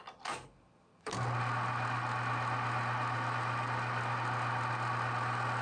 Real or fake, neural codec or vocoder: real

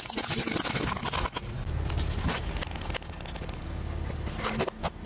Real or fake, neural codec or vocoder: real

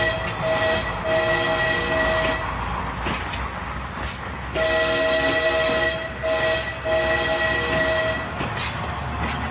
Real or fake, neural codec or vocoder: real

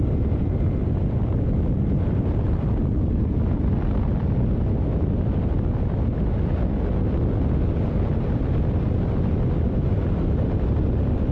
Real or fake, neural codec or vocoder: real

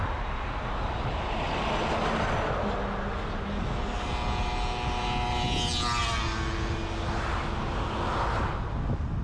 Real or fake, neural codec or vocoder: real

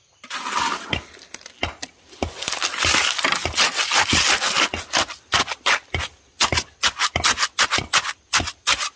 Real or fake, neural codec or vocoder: real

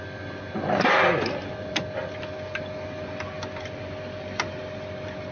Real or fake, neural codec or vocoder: real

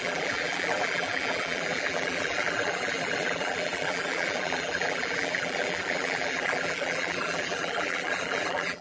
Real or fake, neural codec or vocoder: fake, vocoder, BigVGAN v2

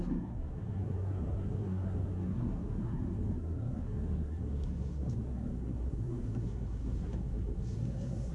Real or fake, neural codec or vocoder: fake, codec, SNAC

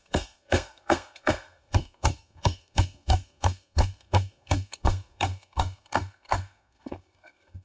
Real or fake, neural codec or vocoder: fake, codec, SNAC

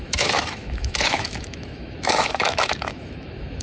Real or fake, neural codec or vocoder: fake, autoencoder, DAC-VAE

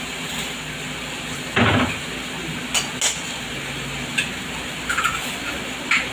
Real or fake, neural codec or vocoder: real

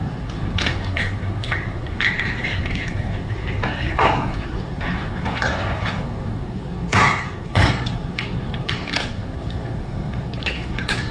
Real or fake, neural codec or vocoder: fake, codec, SNAC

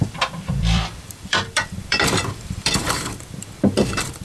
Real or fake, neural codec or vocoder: fake, vocoder, BigVGAN v2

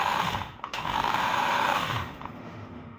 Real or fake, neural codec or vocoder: fake, autoencoder, DAC-VAE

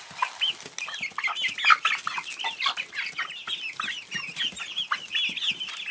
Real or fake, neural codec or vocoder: real